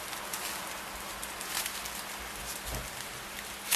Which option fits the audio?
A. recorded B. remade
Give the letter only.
A